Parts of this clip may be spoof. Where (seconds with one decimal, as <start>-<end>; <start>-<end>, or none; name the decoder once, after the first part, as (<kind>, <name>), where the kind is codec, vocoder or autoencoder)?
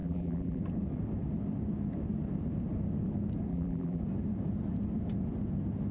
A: 0.0-0.6 (vocoder, BigVGAN v2); 3.5-4.0